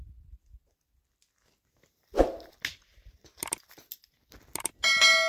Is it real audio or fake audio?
real